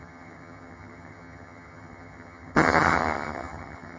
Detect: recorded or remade remade